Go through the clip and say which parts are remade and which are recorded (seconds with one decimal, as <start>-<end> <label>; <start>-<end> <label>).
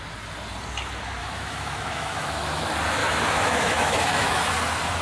0.0-1.2 recorded; 1.2-2.6 remade; 2.6-3.0 recorded; 3.0-4.5 remade; 4.5-5.0 recorded